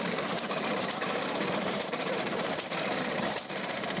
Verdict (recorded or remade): remade